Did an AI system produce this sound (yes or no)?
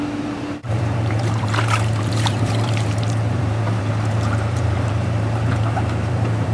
yes